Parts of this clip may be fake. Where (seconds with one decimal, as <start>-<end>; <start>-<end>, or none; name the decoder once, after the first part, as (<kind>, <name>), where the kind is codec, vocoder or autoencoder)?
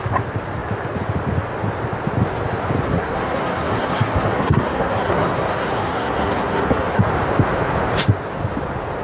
2.9-7.0 (codec, SNAC)